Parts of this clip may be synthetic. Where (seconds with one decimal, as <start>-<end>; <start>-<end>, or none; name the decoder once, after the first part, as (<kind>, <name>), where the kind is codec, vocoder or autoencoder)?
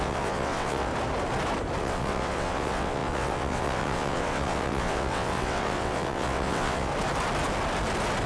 0.0-0.9 (vocoder, WaveNeXt); 1.8-6.9